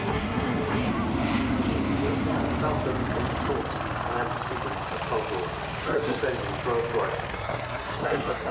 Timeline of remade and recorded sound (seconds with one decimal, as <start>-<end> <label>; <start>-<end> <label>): 0.0-0.9 remade; 0.9-5.8 recorded; 5.8-6.2 remade; 6.2-7.3 recorded; 7.3-8.5 remade